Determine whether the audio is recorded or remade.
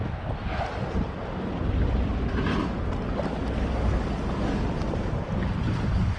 recorded